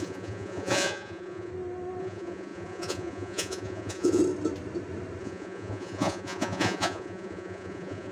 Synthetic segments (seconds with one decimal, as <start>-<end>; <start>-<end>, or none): 0.0-1.5; 2.0-4.2; 5.2-8.1